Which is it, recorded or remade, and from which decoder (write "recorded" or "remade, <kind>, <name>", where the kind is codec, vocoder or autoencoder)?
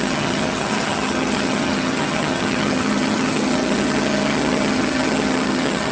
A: remade, vocoder, HiFi-GAN